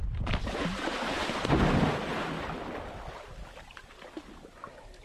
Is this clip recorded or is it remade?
recorded